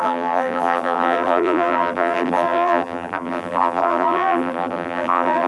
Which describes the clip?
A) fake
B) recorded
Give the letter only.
A